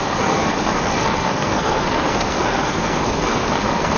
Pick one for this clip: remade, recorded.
remade